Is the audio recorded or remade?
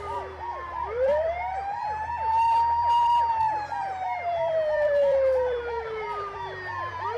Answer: remade